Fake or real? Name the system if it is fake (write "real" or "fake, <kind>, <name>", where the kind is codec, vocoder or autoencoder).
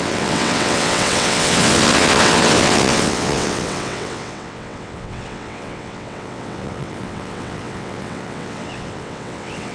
fake, vocoder, WaveNeXt